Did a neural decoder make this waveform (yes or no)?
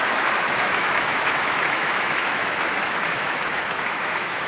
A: yes